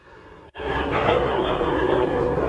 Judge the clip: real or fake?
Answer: fake